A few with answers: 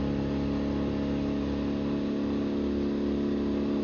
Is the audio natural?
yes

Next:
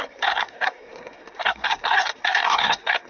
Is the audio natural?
no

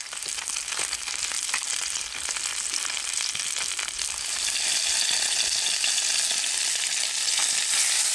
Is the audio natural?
yes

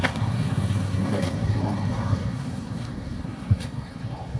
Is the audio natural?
no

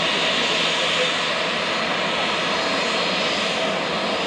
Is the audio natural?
yes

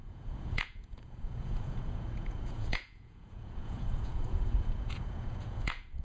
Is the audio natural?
no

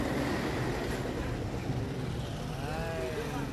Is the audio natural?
yes